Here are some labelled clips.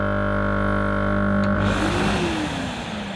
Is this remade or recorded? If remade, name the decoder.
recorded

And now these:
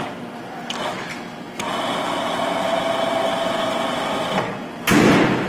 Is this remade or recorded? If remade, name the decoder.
recorded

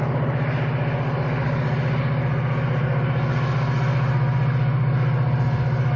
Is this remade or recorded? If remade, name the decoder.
recorded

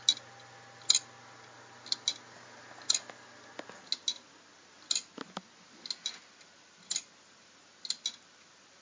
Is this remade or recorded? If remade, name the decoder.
recorded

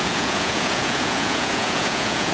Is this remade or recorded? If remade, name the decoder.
remade, vocoder, Vocos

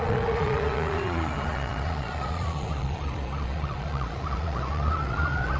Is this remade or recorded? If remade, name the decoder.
remade, vocoder, Vocos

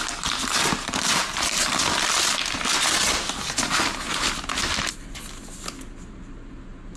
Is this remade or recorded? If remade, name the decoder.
recorded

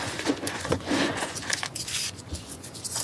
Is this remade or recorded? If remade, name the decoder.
remade, vocoder, Vocos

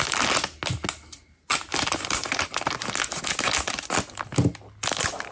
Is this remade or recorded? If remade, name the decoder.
recorded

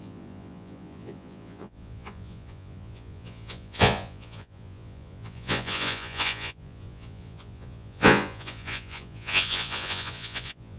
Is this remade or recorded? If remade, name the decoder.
remade, vocoder, Vocos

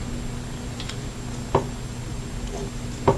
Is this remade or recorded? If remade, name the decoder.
recorded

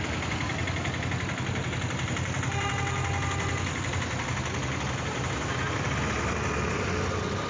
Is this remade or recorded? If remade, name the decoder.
recorded